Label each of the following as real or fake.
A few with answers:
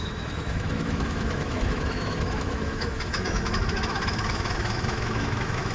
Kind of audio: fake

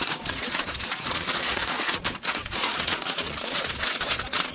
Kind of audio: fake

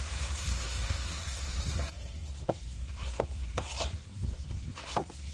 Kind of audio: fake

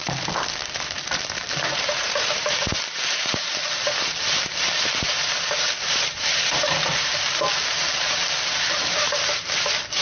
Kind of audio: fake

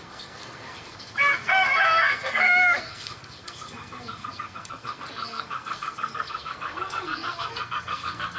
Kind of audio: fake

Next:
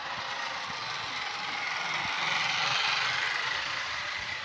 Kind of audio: real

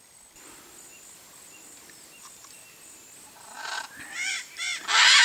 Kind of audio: real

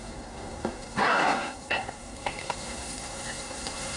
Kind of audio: fake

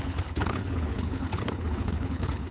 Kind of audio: fake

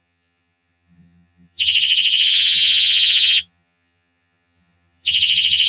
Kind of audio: fake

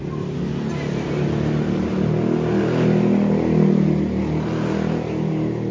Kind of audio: real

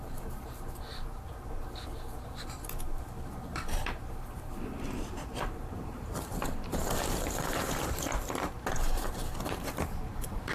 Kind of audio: fake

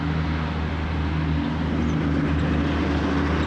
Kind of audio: real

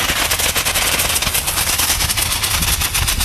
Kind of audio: real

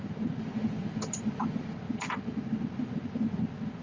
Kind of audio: real